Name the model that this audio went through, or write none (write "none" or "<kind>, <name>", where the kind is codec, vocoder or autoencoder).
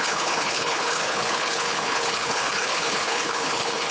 codec, HILCodec